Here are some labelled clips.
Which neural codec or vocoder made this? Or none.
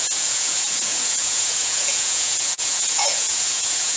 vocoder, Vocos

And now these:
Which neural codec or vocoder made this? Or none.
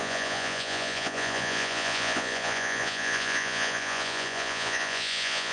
vocoder, Vocos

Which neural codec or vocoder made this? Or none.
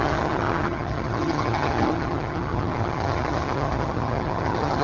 vocoder, HiFi-GAN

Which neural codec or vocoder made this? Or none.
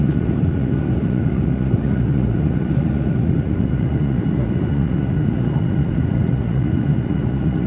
vocoder, Vocos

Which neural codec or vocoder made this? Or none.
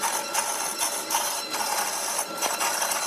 none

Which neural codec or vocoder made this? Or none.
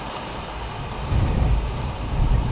none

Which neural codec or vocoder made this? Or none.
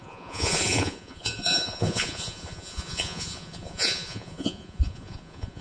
vocoder, Vocos